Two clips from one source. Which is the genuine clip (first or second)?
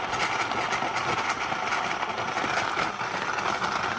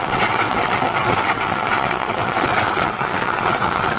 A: first